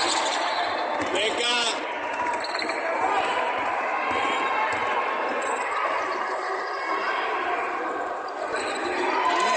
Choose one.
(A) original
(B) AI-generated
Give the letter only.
B